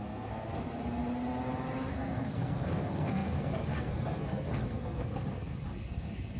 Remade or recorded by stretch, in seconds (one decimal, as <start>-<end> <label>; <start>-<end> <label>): 0.0-0.5 remade; 0.5-1.9 recorded; 1.9-6.4 remade